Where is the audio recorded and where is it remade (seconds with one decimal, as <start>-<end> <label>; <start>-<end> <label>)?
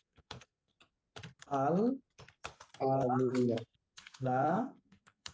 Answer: 0.0-0.7 remade; 0.7-3.9 recorded; 3.9-5.3 remade